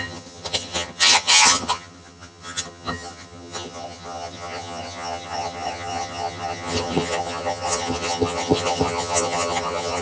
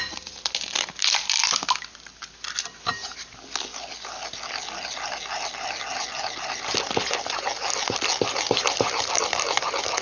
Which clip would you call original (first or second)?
second